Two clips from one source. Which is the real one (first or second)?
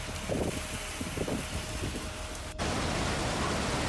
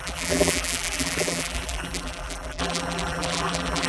first